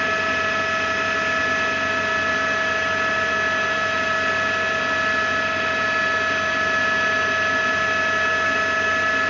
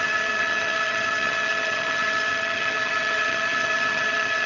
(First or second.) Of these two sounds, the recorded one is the first